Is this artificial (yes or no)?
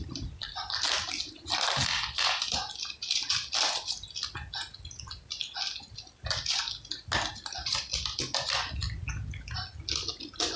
no